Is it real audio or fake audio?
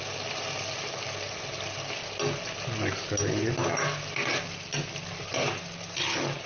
real